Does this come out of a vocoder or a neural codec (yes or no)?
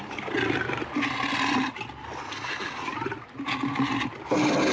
no